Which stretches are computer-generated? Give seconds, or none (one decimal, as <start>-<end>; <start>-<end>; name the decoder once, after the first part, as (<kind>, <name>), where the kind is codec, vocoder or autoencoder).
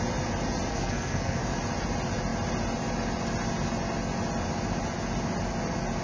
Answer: 0.7-1.4 (codec, SNAC)